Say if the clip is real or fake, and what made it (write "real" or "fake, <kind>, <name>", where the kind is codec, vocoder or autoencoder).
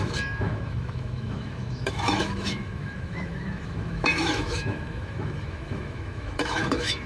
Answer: fake, autoencoder, DAC-VAE